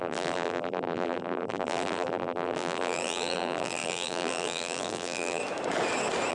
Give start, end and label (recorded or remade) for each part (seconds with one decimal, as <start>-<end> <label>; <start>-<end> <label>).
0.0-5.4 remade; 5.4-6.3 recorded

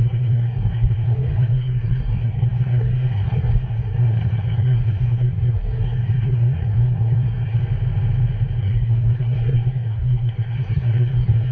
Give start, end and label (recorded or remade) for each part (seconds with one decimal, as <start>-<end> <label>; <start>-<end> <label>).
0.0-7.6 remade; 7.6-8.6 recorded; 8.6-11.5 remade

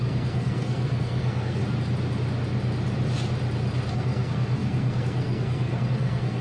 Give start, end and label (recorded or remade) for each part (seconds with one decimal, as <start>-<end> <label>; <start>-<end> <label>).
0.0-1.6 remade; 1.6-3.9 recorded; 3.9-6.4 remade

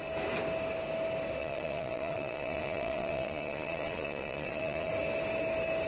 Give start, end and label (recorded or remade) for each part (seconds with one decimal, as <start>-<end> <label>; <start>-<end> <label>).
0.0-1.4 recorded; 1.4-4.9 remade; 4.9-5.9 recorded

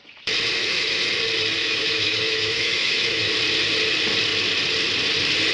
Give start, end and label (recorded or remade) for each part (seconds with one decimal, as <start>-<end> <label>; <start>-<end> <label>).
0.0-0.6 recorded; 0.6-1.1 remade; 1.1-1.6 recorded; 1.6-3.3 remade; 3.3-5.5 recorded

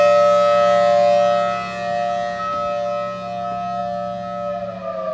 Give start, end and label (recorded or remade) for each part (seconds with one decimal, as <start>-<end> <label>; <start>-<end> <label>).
0.0-5.1 recorded